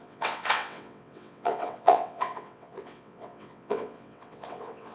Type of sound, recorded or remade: remade